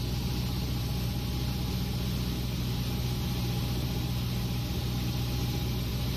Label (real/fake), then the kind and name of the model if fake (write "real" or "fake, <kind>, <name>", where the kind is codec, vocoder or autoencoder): real